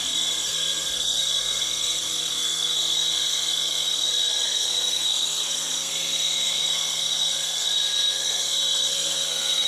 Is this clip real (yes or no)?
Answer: no